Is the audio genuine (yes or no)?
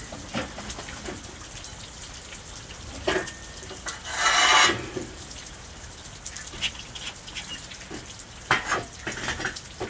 yes